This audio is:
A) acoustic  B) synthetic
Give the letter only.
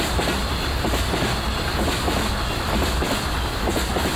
A